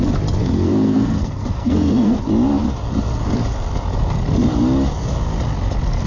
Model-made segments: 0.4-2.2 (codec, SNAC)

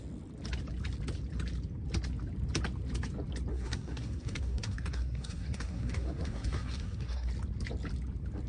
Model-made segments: 3.5-7.3 (codec, SNAC)

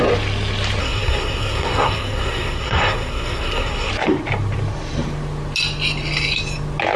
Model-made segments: 0.8-3.9 (codec, SNAC)

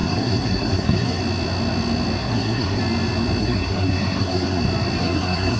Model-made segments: 0.0-1.2 (codec, SNAC); 2.2-2.8; 3.4-4.6; 5.0-5.6

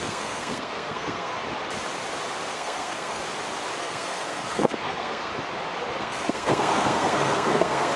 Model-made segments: 0.0-1.3 (codec, SNAC); 2.5-3.2; 3.8-5.3; 6.0-8.0

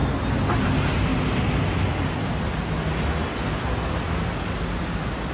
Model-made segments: none